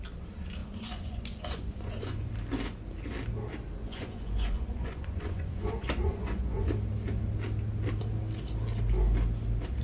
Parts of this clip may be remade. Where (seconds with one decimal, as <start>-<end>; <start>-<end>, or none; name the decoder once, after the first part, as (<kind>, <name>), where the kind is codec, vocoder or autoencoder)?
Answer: 0.6-2.3 (vocoder, Vocos); 3.8-6.7